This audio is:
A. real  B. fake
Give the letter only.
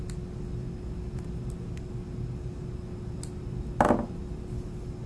A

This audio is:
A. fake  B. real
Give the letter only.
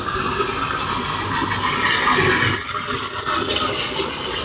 B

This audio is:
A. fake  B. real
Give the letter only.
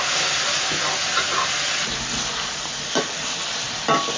B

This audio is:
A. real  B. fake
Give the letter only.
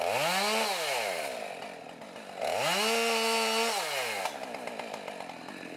A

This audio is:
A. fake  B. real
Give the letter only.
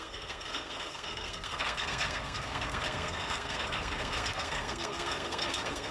A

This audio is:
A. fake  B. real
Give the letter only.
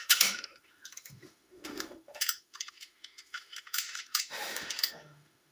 A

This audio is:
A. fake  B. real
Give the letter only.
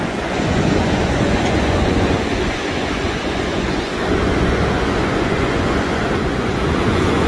A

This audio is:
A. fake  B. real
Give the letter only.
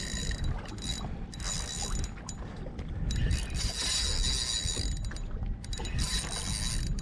B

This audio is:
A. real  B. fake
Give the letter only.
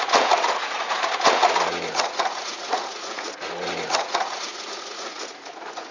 B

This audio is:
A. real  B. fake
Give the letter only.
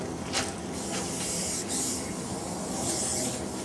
A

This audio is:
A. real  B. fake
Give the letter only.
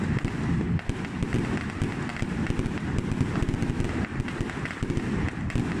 A